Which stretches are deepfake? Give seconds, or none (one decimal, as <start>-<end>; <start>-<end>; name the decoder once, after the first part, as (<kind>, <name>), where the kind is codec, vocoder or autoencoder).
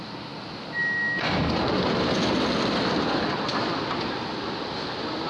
none